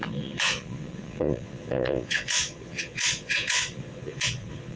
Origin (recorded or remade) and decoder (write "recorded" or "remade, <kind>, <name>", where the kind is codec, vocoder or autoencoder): remade, vocoder, Vocos